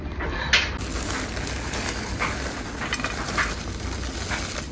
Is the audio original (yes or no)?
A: yes